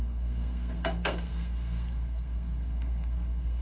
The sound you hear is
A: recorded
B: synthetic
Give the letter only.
B